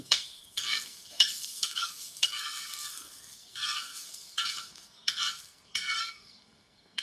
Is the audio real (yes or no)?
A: no